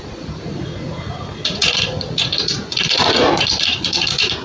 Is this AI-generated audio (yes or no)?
yes